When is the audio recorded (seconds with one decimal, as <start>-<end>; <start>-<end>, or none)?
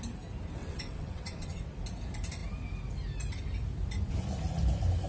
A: 0.0-0.6; 1.6-5.1